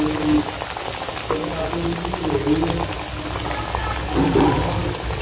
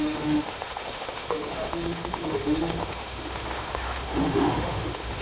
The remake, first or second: second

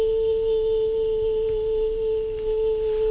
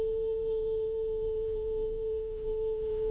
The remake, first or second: second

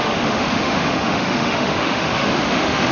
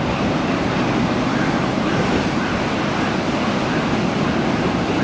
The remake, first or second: first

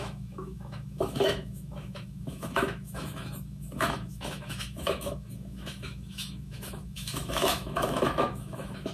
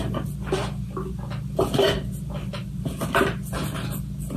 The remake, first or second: first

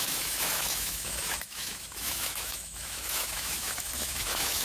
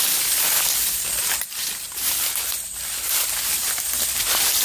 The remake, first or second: first